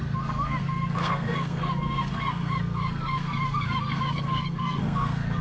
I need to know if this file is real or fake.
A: fake